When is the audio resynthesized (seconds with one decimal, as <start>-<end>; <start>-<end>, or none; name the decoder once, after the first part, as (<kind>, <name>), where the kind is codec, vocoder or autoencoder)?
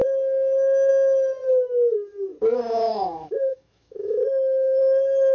2.9-4.8 (autoencoder, DAC-VAE)